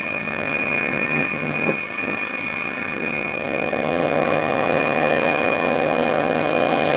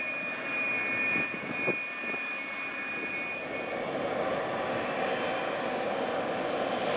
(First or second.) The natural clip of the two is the second